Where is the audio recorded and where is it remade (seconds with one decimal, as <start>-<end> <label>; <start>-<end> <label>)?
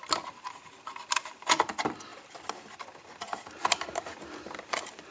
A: 0.0-5.1 recorded